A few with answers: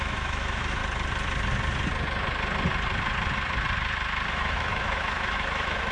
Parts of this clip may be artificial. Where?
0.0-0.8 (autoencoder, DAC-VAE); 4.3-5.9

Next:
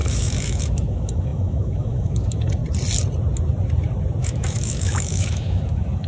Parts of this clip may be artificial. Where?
0.0-2.6 (autoencoder, DAC-VAE); 4.2-6.1

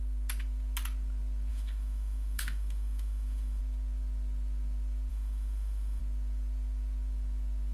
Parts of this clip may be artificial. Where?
1.5-3.6 (autoencoder, DAC-VAE); 5.1-6.0

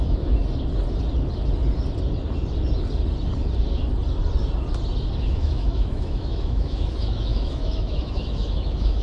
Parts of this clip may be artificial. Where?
0.0-0.4 (autoencoder, DAC-VAE); 5.2-9.0